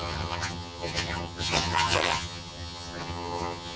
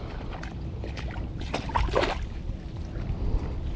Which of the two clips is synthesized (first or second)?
first